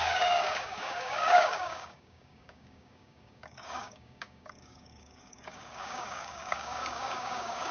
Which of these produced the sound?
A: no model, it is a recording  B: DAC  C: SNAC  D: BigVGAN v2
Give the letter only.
B